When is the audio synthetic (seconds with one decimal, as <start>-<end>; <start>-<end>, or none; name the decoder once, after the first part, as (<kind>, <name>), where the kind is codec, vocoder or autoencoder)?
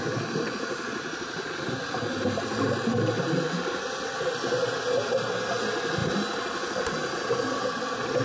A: 6.0-7.4 (vocoder, BigVGAN v2)